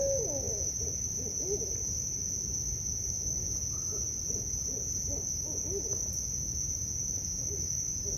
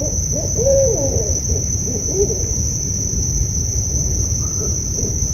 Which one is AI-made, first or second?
second